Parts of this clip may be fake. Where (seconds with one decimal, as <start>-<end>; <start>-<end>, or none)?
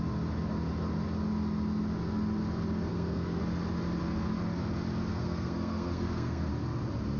2.9-3.4; 5.1-6.5